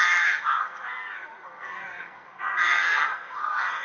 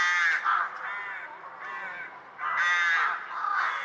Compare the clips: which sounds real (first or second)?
second